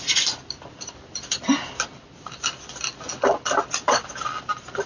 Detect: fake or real real